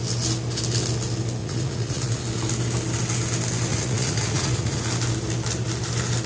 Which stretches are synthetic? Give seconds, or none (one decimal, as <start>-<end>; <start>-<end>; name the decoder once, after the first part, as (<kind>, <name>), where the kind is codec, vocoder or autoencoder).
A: 1.4-2.2 (vocoder, Vocos); 3.7-4.8